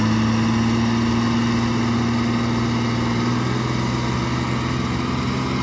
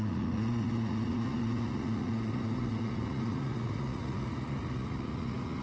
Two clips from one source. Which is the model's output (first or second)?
second